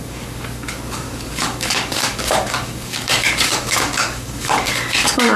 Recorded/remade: remade